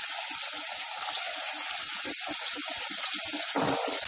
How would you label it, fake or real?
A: real